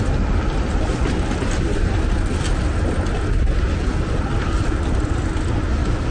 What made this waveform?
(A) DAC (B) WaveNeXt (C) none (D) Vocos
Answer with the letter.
C